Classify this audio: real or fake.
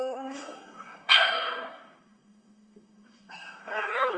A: fake